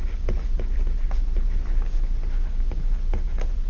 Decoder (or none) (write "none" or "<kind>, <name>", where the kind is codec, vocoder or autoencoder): none